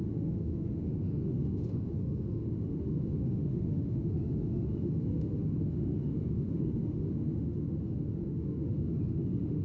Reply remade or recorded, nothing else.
remade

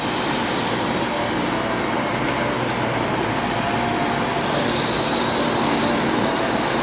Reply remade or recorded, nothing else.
recorded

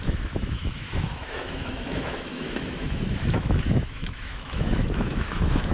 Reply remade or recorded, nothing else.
remade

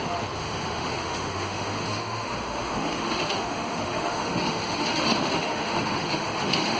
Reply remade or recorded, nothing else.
remade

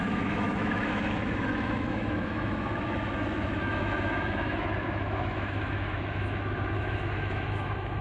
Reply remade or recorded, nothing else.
remade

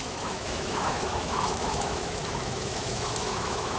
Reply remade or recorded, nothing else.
remade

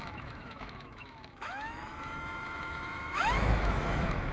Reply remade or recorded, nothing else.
remade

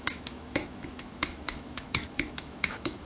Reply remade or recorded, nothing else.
remade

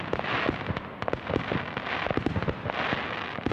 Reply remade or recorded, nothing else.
recorded